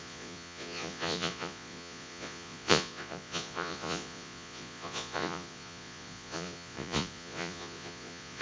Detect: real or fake fake